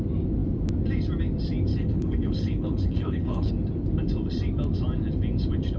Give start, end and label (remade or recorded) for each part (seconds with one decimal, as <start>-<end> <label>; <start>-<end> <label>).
0.0-1.7 recorded; 1.7-3.5 remade; 3.5-5.8 recorded